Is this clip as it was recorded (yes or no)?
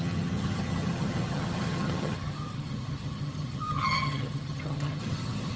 no